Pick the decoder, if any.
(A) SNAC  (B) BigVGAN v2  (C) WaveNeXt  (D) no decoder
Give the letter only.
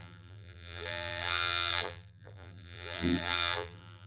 B